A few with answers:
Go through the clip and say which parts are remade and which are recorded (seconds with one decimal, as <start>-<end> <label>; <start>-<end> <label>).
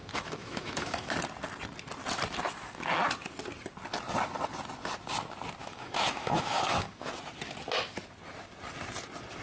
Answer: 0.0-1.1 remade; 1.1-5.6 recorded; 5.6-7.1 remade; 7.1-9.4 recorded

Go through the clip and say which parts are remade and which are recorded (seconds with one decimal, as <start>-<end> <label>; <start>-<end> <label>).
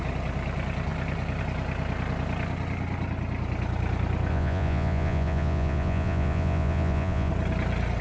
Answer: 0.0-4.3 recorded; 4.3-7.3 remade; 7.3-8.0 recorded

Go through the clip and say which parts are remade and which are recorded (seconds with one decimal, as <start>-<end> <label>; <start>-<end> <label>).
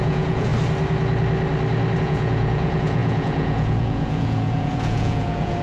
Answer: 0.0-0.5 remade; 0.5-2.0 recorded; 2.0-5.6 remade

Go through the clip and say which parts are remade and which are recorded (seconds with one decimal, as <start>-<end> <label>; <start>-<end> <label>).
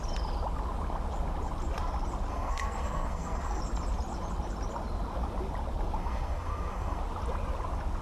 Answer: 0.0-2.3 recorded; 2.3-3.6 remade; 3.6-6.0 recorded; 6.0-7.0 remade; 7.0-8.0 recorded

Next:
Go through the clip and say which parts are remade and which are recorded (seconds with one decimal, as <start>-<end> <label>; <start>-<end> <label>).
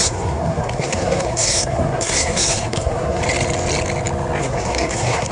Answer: 0.0-3.2 remade; 3.2-4.4 recorded; 4.4-5.3 remade